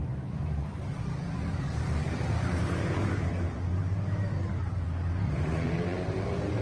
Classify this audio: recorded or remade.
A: remade